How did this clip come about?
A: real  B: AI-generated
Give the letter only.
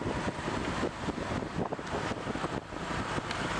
A